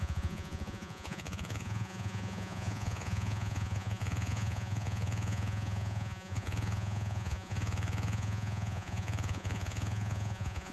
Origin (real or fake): fake